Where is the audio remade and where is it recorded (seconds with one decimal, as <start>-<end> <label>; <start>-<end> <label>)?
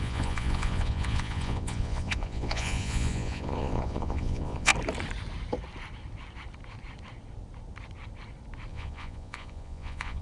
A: 0.0-4.7 remade; 4.7-8.7 recorded; 8.7-10.2 remade